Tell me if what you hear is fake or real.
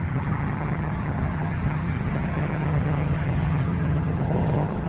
fake